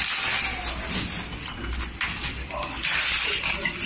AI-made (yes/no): no